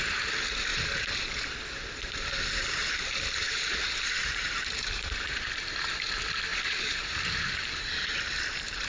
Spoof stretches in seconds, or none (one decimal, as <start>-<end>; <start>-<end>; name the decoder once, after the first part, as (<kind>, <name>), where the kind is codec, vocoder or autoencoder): 0.7-5.9 (vocoder, BigVGAN v2); 6.5-8.1